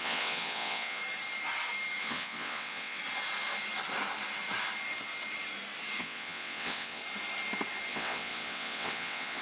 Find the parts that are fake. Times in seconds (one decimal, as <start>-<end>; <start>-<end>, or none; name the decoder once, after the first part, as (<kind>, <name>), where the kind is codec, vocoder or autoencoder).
0.0-1.0 (vocoder, WaveNeXt); 2.0-3.0; 6.0-7.0; 7.9-9.4